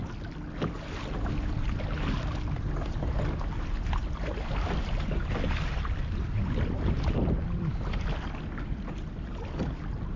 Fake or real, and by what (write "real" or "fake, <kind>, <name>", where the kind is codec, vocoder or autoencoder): real